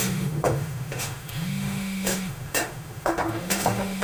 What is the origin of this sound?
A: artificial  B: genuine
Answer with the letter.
A